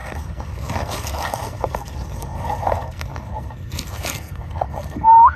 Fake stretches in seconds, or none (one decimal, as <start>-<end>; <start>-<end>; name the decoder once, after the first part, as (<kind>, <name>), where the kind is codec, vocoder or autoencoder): 0.0-5.4 (codec, SNAC)